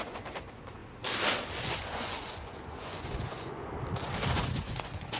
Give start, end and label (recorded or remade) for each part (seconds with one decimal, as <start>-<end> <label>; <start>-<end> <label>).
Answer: 0.0-0.8 remade; 0.8-1.5 recorded; 1.5-3.6 remade; 3.6-4.3 recorded; 4.3-5.2 remade